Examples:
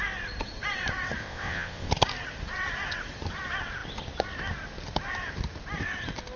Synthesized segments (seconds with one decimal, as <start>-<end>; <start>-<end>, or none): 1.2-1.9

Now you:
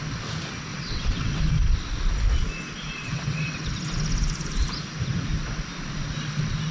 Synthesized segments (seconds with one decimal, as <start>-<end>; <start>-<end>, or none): 0.7-1.4; 3.0-3.7

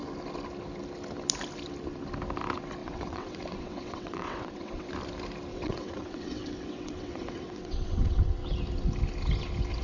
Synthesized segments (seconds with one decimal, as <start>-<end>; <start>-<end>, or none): 2.8-4.9; 5.5-8.3

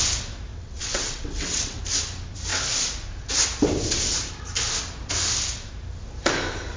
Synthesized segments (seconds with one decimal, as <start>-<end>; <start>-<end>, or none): 0.5-1.8